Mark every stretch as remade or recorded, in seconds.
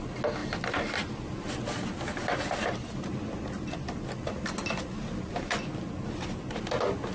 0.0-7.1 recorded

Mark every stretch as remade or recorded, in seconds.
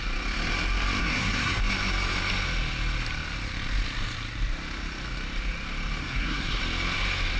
0.0-1.0 recorded; 1.0-1.6 remade; 1.6-6.0 recorded; 6.0-6.6 remade; 6.6-7.4 recorded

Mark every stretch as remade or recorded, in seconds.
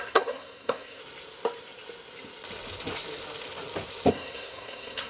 0.0-1.0 remade; 1.0-4.1 recorded; 4.1-5.1 remade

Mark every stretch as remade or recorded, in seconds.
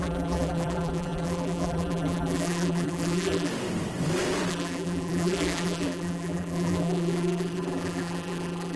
0.0-3.5 remade; 3.5-4.5 recorded; 4.5-8.8 remade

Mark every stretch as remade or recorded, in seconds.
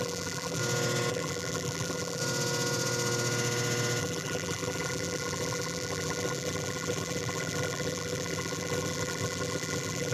0.0-0.6 remade; 0.6-1.1 recorded; 1.1-2.2 remade; 2.2-4.0 recorded; 4.0-10.1 remade